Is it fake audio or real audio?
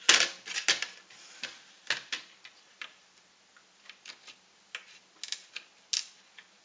real